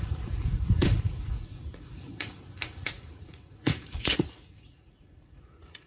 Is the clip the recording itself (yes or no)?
no